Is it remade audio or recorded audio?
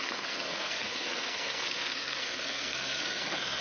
remade